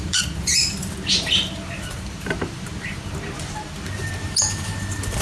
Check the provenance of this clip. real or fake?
fake